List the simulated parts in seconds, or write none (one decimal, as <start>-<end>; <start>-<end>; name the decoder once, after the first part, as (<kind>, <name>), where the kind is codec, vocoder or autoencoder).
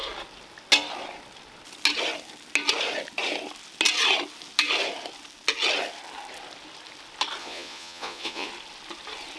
7.4-8.5 (vocoder, Vocos)